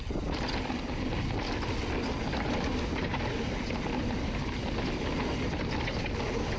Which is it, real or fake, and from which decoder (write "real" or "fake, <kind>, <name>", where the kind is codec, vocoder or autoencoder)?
real